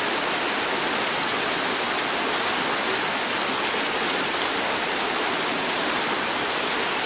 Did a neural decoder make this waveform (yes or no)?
no